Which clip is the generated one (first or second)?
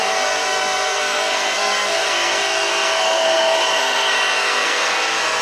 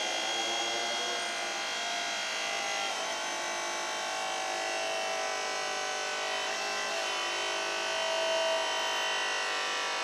first